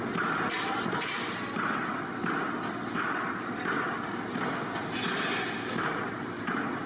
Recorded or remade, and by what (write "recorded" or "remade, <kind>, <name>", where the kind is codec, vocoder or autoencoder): recorded